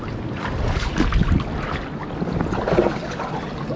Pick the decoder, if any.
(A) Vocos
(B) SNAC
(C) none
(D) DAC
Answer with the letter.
C